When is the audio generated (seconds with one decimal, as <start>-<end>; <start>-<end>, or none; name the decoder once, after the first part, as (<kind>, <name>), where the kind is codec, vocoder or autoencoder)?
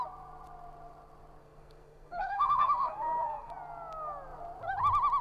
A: 1.4-3.5 (codec, SNAC)